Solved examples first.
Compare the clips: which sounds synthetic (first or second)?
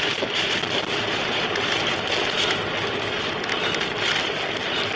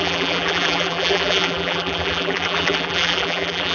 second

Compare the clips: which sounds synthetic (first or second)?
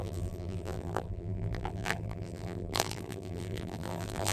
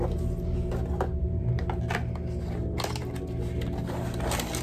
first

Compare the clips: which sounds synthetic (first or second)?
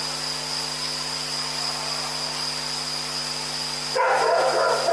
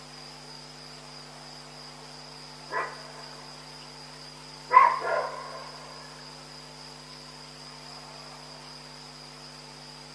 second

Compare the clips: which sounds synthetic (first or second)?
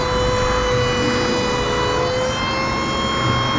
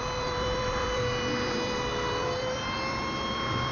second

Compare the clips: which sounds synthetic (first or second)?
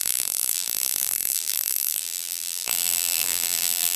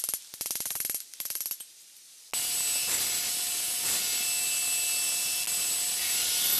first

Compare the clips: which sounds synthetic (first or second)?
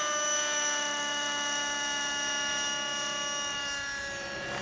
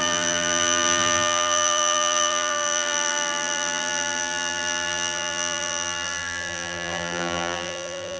second